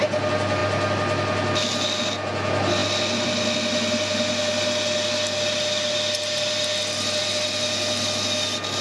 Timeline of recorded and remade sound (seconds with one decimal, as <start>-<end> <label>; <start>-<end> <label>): 0.0-8.8 recorded